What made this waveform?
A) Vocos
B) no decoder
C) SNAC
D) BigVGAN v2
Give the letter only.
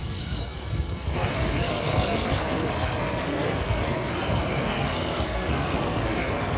C